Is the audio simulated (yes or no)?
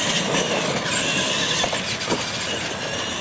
no